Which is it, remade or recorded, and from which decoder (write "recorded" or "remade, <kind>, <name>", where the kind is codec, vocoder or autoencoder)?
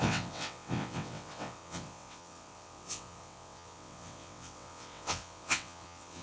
remade, vocoder, WaveNeXt